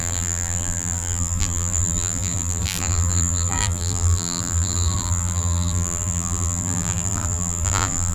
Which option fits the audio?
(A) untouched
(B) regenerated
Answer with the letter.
B